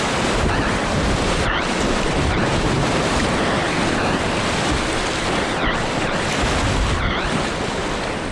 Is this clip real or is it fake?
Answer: real